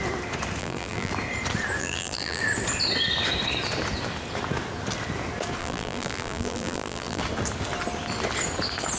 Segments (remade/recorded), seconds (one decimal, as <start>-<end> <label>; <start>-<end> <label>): 0.0-0.6 recorded; 0.6-1.1 remade; 1.1-1.8 recorded; 1.8-2.4 remade; 2.4-5.6 recorded; 5.6-7.2 remade; 7.2-9.0 recorded

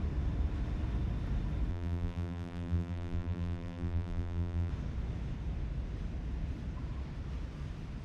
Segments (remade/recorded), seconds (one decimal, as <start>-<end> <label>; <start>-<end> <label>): 0.0-1.7 recorded; 1.7-4.7 remade; 4.7-8.0 recorded

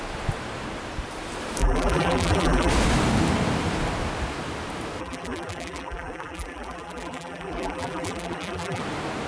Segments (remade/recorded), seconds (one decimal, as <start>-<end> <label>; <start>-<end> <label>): 0.0-1.6 recorded; 1.6-2.7 remade; 2.7-5.0 recorded; 5.0-8.8 remade; 8.8-9.3 recorded

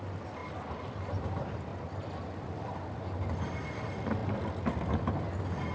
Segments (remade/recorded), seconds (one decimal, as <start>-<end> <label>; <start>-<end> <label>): 0.0-0.4 recorded; 0.4-1.0 remade; 1.0-1.7 recorded; 1.7-2.8 remade; 2.8-5.7 recorded

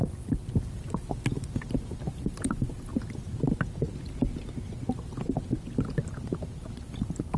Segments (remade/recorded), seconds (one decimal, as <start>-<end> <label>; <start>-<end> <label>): 0.0-0.4 remade; 0.4-2.1 recorded; 2.1-2.9 remade; 2.9-6.8 recorded; 6.8-7.4 remade

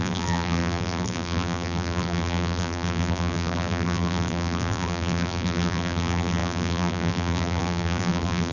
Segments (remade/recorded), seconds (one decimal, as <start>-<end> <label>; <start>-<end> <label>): 0.0-8.5 remade

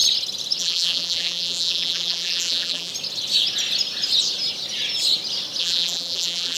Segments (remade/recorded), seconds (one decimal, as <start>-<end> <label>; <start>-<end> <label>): 0.0-0.6 recorded; 0.6-2.9 remade; 2.9-5.6 recorded; 5.6-6.6 remade

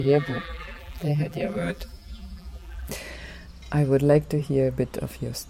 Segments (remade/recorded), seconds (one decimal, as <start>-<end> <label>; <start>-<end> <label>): 0.0-2.9 remade; 2.9-5.5 recorded